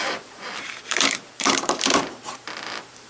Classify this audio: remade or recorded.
remade